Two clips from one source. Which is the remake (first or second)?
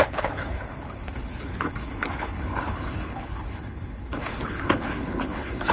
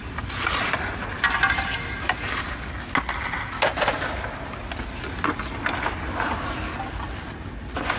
first